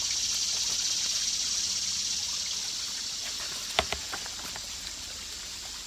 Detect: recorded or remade recorded